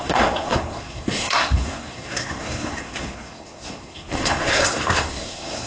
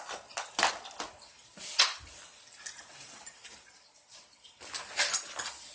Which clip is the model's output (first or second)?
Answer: first